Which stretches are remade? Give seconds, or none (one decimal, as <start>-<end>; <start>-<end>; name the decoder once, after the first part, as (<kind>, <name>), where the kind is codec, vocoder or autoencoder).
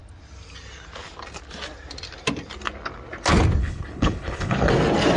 3.6-4.7 (codec, HILCodec)